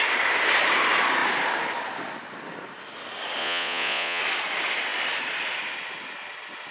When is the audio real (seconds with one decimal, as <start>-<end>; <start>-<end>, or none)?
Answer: 0.0-3.4; 4.2-6.7